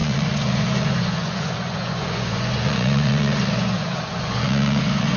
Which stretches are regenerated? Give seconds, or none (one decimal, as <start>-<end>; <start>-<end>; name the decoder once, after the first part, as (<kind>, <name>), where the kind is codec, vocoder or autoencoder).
0.0-5.2 (vocoder, Vocos)